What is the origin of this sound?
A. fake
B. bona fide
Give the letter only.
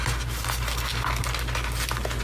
B